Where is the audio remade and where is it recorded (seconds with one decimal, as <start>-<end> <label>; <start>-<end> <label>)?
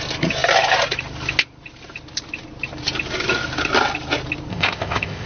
0.0-4.5 recorded; 4.5-5.3 remade